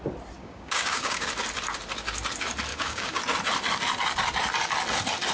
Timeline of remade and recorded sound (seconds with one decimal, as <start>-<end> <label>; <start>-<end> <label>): 0.0-0.4 recorded; 0.4-1.3 remade; 1.3-2.7 recorded; 2.7-3.2 remade; 3.2-5.3 recorded